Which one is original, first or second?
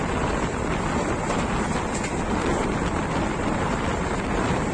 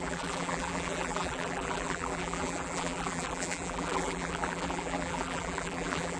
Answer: first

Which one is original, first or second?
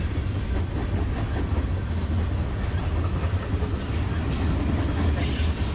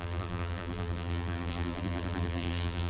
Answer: first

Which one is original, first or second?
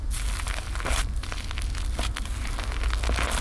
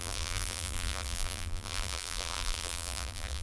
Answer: first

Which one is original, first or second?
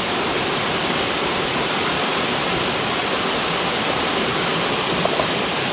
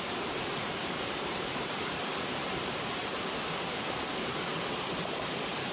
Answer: first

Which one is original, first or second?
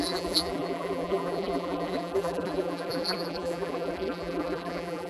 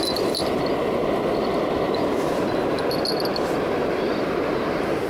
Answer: second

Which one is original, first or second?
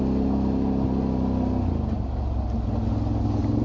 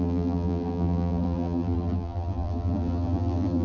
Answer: first